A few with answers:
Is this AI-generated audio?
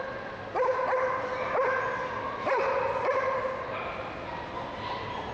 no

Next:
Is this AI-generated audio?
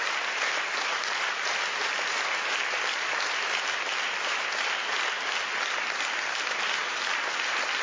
no